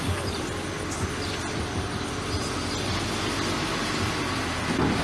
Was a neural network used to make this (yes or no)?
no